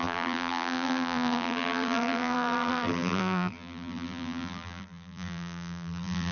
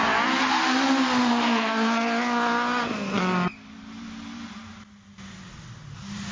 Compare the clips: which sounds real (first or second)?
second